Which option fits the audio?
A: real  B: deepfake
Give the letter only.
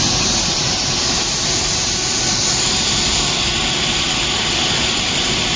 A